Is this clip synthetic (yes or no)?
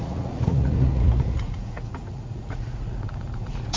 yes